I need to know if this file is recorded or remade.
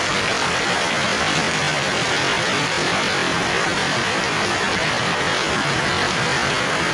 recorded